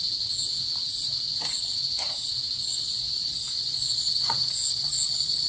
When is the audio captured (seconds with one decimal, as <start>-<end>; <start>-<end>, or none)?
0.0-2.7